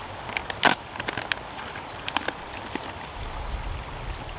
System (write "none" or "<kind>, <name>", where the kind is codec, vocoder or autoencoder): none